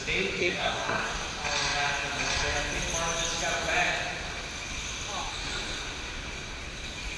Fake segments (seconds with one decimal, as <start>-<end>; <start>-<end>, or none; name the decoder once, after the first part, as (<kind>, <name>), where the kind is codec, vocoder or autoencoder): 0.4-1.1 (codec, SNAC)